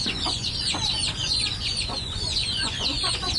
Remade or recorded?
remade